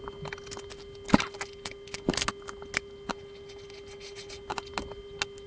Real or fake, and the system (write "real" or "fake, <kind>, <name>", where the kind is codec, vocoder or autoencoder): real